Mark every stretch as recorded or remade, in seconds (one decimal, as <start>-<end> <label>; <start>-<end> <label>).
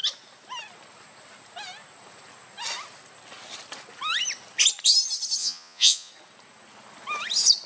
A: 0.0-5.4 recorded; 5.4-6.1 remade; 6.1-7.7 recorded